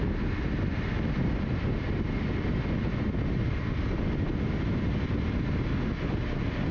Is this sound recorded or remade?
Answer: recorded